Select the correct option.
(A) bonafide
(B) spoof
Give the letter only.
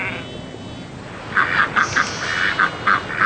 A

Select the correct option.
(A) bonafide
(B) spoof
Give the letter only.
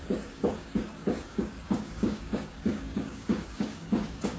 B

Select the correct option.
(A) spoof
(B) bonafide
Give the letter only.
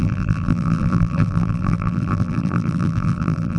A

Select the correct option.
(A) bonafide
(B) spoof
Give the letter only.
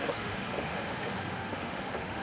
B